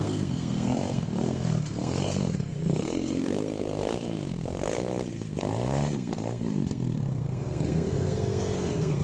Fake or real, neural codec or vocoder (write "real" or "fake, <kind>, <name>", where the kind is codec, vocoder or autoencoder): fake, codec, SNAC